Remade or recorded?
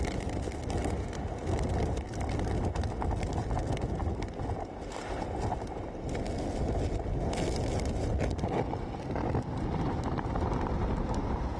recorded